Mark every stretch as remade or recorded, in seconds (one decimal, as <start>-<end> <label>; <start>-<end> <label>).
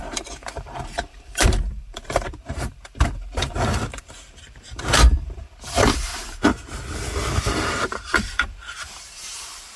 0.0-6.1 remade; 6.1-7.4 recorded; 7.4-9.8 remade